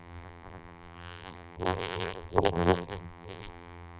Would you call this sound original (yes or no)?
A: no